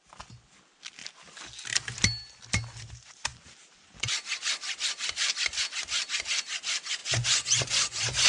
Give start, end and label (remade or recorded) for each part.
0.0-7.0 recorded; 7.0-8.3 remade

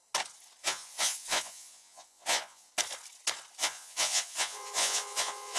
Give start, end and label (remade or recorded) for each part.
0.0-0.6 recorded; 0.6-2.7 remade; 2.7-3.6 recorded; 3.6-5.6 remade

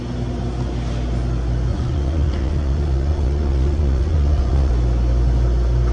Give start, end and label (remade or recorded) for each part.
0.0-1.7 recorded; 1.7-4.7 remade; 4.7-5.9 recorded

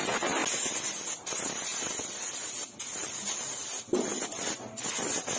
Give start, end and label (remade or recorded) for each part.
0.0-5.4 recorded

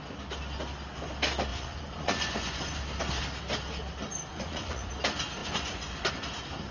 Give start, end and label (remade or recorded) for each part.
0.0-1.5 recorded; 1.5-2.8 remade; 2.8-4.3 recorded; 4.3-4.9 remade; 4.9-5.4 recorded; 5.4-6.1 remade; 6.1-6.7 recorded